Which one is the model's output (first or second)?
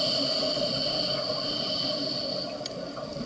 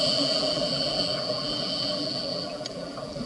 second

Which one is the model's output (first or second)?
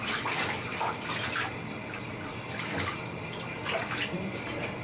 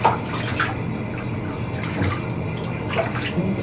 first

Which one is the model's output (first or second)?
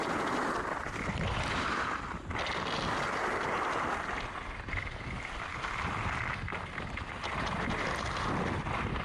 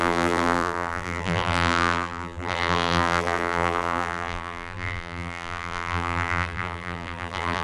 second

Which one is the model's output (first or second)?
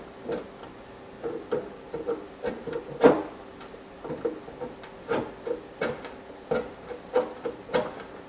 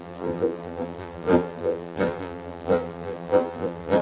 second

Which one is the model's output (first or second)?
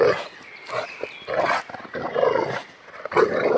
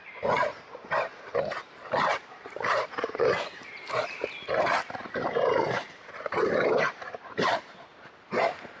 second